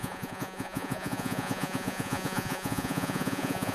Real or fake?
fake